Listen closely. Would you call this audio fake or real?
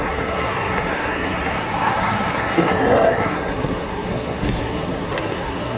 fake